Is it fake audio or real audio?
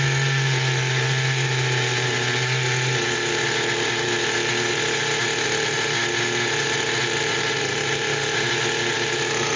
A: real